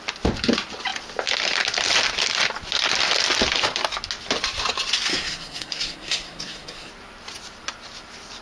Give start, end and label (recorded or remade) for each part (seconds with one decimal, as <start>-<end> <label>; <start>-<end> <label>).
0.0-5.1 recorded; 5.1-6.9 remade; 6.9-8.4 recorded